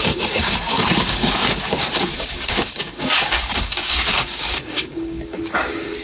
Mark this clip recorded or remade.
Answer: remade